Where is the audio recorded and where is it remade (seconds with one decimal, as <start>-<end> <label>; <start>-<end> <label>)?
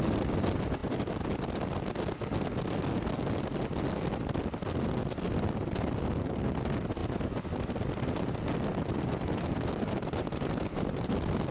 0.0-11.5 recorded